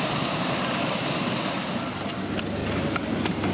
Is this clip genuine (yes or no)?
yes